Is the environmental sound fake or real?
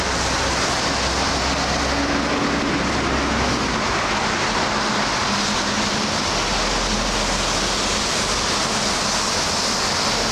real